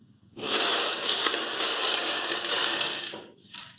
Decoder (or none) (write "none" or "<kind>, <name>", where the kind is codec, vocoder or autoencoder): codec, DAC